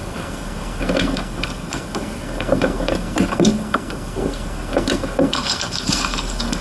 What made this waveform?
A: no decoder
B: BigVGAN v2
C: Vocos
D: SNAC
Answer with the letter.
D